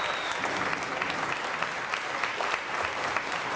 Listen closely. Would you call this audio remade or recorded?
recorded